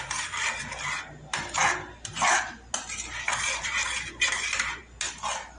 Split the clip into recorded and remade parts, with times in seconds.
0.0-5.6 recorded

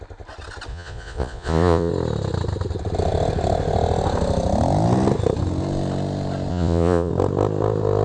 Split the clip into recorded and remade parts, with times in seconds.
0.0-0.7 recorded; 0.7-1.9 remade; 1.9-6.5 recorded; 6.5-7.1 remade; 7.1-8.0 recorded

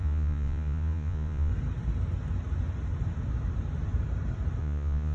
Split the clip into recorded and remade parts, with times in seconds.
0.0-1.5 remade; 1.5-4.6 recorded; 4.6-5.1 remade

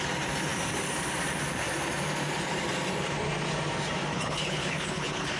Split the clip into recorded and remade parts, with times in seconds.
0.0-4.1 recorded; 4.1-5.4 remade

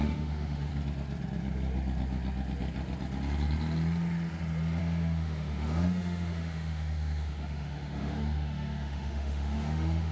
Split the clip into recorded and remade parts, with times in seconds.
0.0-0.7 remade; 0.7-4.8 recorded; 4.8-10.1 remade

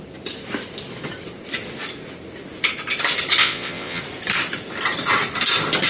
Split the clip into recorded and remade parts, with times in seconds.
0.0-3.4 recorded; 3.4-4.0 remade; 4.0-5.9 recorded